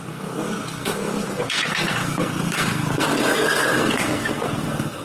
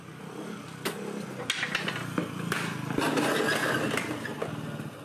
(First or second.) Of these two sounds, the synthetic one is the first